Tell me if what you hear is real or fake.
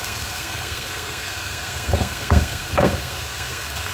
fake